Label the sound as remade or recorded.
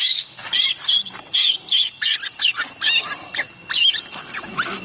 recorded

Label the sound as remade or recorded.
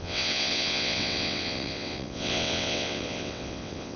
remade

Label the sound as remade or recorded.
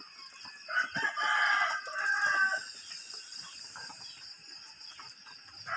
recorded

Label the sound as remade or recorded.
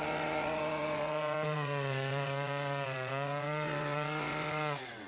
remade